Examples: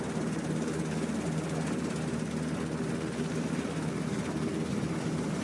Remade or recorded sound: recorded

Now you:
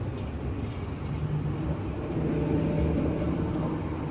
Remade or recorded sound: recorded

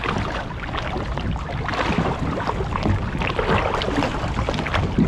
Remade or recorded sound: recorded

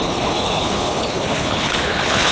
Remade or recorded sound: remade